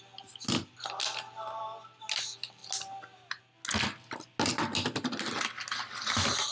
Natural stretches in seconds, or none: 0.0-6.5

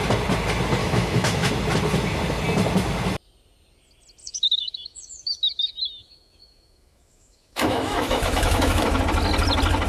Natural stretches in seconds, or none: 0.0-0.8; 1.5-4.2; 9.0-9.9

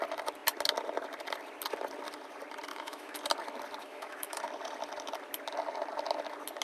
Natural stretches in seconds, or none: 0.0-2.7; 3.2-3.8; 4.4-6.6

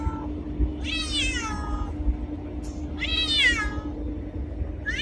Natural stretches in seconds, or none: 0.0-5.0

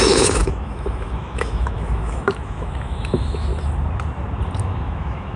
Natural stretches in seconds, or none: 3.5-4.6

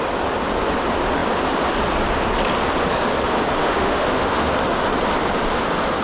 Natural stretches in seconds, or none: 0.0-3.6; 4.5-6.0

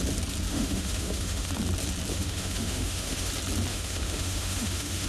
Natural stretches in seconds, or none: 0.0-0.5; 1.5-2.1; 3.3-3.7

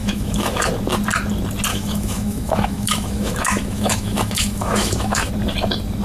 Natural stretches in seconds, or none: 0.7-1.7; 5.3-6.0